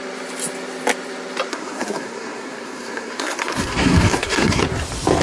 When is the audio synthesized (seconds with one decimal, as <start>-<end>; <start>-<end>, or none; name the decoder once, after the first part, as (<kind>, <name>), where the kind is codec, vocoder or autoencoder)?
1.5-4.6 (codec, SNAC)